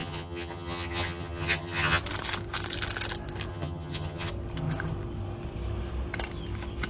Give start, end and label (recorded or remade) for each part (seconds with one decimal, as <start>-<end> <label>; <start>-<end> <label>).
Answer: 0.0-2.0 remade; 2.0-3.5 recorded; 3.5-4.3 remade; 4.3-6.9 recorded